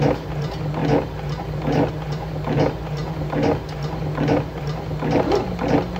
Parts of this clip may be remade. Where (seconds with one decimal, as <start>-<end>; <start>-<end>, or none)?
none